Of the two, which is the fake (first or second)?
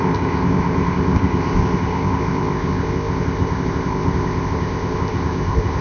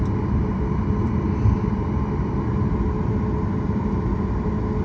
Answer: first